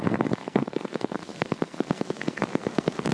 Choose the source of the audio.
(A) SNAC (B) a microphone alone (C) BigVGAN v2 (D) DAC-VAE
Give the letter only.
A